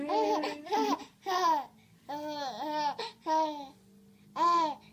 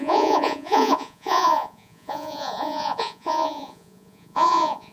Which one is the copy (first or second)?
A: second